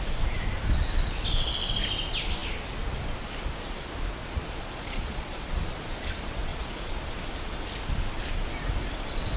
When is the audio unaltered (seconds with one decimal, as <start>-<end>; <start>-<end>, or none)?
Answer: 0.0-4.2; 5.6-6.5; 7.0-9.4